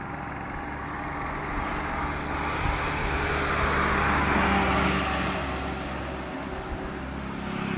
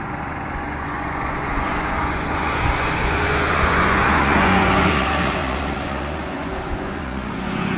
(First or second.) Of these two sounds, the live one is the first